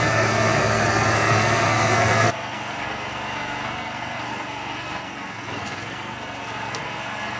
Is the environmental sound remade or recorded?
remade